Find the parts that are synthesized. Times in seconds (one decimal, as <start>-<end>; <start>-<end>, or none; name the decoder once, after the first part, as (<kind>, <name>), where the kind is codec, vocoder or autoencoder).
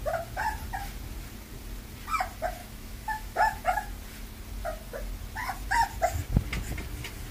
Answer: 2.6-3.6 (autoencoder, DAC-VAE)